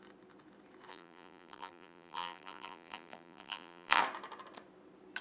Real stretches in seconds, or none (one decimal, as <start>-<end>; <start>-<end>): 0.0-0.9; 4.0-5.2